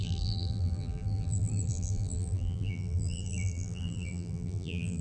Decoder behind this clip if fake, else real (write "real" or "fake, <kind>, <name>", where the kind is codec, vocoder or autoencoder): fake, vocoder, BigVGAN v2